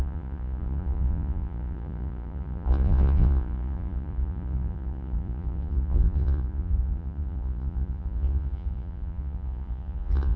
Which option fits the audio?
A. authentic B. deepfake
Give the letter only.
B